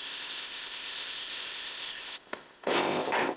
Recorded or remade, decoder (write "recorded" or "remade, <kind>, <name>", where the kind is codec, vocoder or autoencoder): remade, codec, ZipCodec